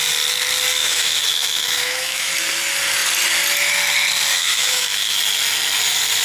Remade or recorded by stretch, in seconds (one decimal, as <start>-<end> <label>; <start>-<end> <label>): 0.0-0.8 recorded; 0.8-2.3 remade; 2.3-4.3 recorded; 4.3-5.2 remade; 5.2-6.2 recorded